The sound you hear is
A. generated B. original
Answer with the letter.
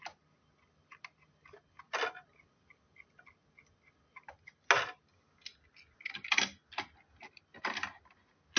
B